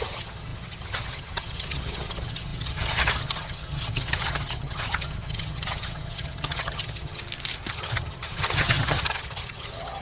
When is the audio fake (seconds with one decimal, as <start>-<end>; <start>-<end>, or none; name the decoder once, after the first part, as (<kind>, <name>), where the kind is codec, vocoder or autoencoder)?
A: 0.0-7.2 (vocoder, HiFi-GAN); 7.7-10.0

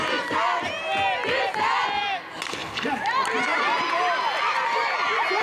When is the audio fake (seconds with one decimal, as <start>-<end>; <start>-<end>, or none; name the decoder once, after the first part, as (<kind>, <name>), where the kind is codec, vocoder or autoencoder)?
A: none

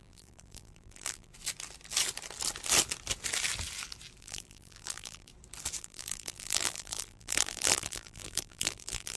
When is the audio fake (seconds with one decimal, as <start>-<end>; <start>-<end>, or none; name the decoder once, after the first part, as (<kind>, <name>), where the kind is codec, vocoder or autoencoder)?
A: 0.0-1.3 (vocoder, BigVGAN v2); 4.2-5.3; 5.8-9.2

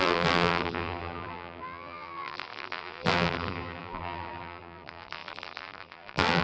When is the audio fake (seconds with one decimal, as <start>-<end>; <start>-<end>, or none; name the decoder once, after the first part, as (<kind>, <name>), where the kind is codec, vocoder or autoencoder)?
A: 0.0-6.4 (vocoder, BigVGAN v2)